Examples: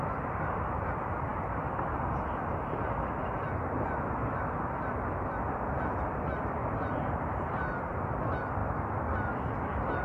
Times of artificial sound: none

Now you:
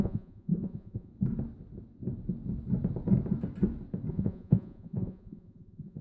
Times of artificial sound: 0.0-1.1 (vocoder, Vocos); 4.1-6.0